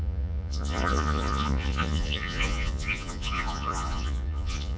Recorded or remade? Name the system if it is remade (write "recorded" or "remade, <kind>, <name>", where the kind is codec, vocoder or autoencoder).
remade, vocoder, Vocos